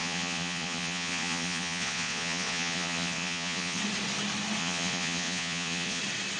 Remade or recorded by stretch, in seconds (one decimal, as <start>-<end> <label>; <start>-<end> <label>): 0.0-3.8 remade; 3.8-4.6 recorded; 4.6-6.0 remade; 6.0-6.4 recorded